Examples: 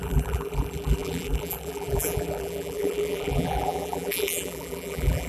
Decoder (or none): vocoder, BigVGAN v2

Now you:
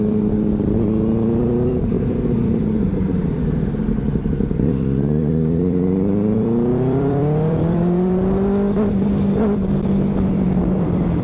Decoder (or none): vocoder, BigVGAN v2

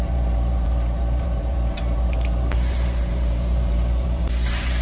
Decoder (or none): vocoder, BigVGAN v2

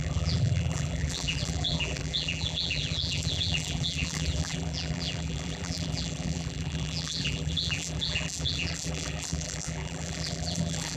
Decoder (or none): vocoder, BigVGAN v2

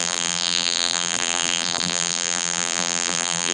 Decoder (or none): vocoder, BigVGAN v2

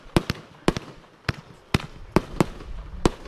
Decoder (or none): vocoder, BigVGAN v2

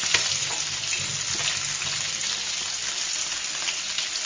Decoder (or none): none